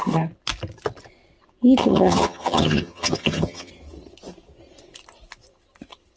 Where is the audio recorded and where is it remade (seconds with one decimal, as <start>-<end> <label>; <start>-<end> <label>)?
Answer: 0.0-1.8 recorded; 1.8-3.7 remade; 3.7-6.2 recorded